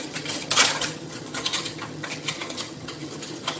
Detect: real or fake fake